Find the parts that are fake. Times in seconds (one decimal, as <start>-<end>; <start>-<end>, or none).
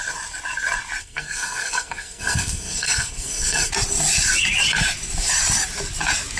1.0-3.7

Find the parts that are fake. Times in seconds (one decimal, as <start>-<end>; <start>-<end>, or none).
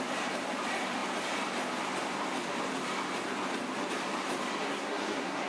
4.6-5.5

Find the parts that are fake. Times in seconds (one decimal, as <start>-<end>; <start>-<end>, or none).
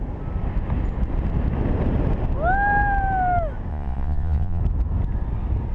3.7-4.6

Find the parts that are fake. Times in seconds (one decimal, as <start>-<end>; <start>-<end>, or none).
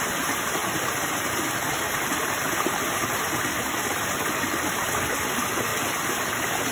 0.0-5.7